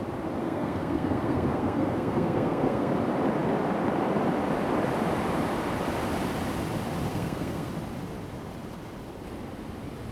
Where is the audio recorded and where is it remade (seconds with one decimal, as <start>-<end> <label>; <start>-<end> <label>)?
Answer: 0.0-0.4 recorded; 0.4-2.9 remade; 2.9-7.1 recorded; 7.1-7.7 remade; 7.7-10.1 recorded